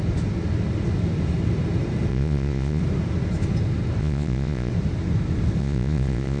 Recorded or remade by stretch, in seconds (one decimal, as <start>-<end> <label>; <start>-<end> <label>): 0.0-2.1 recorded; 2.1-2.8 remade; 2.8-4.0 recorded; 4.0-4.7 remade; 4.7-5.6 recorded; 5.6-6.4 remade